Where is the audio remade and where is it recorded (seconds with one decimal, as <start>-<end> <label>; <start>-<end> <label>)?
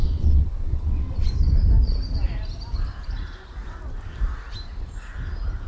0.0-1.3 remade; 1.3-5.7 recorded